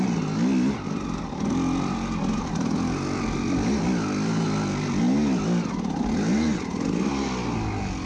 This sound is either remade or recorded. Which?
recorded